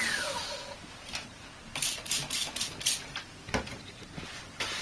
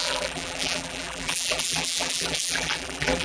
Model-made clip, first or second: second